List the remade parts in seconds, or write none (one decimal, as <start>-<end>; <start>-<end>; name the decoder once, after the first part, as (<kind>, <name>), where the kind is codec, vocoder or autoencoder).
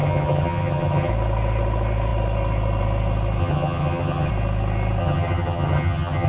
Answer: 0.0-1.1 (vocoder, HiFi-GAN); 3.4-4.3; 5.0-6.3